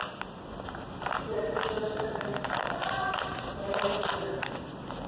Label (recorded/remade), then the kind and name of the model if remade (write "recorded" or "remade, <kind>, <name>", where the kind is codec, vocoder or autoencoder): recorded